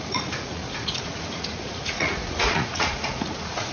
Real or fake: fake